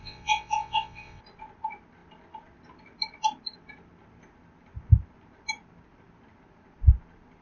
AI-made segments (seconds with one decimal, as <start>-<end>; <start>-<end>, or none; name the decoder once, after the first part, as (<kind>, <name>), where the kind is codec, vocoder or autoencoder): 0.0-1.2 (vocoder, WaveNeXt)